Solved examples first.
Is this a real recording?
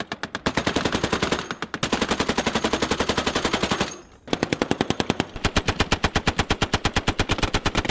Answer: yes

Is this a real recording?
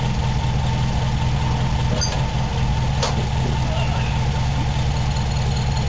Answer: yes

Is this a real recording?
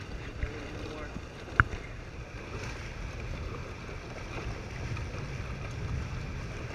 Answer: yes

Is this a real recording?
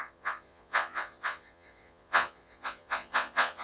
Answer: no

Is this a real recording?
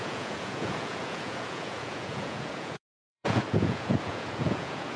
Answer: no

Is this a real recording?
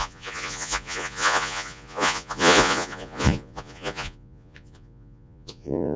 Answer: no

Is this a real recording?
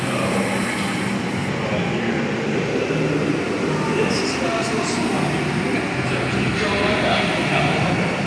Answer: yes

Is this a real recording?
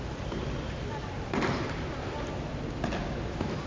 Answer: yes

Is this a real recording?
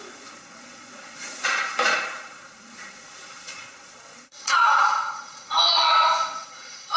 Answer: no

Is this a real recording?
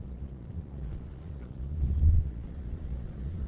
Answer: no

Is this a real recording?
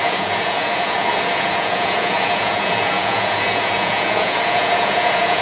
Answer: no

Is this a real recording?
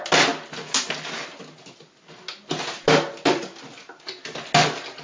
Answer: yes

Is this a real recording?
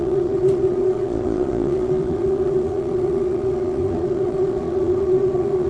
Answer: no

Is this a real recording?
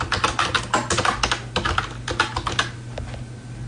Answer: yes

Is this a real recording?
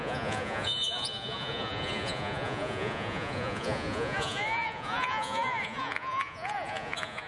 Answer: no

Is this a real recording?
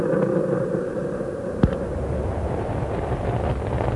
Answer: yes